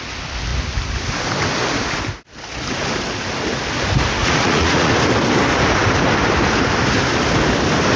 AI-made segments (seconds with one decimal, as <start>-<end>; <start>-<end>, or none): 4.2-4.9

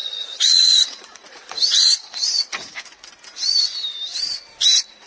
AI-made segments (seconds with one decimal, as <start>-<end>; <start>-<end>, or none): 0.0-3.1